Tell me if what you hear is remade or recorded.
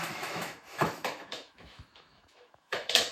remade